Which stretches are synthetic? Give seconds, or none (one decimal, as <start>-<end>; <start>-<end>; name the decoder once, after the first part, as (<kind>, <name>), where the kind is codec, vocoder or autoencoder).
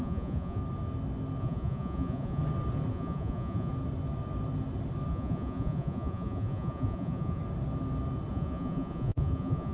0.0-0.6 (vocoder, Vocos); 1.4-2.4; 2.9-3.7; 5.1-7.4; 8.3-9.7